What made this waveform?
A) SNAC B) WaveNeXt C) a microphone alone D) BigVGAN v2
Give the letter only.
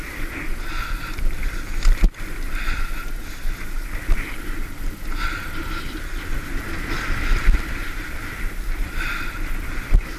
C